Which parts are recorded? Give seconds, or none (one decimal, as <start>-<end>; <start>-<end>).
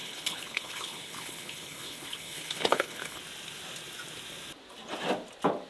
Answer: 3.2-5.7